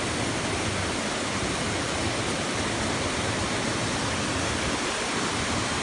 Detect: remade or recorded recorded